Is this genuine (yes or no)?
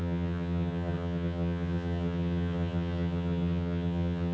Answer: no